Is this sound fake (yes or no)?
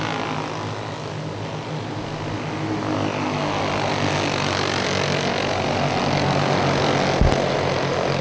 no